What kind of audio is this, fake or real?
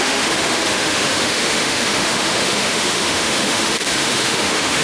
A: fake